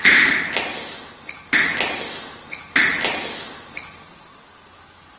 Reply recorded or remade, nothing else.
recorded